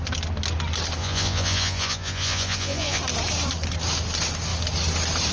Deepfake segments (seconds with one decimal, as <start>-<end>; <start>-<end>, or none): 1.0-3.0